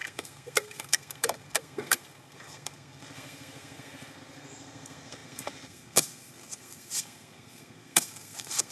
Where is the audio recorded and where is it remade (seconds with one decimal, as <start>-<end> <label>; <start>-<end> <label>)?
0.0-8.7 remade